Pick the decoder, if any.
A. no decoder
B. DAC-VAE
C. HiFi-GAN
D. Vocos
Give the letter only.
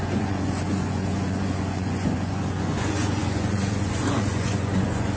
D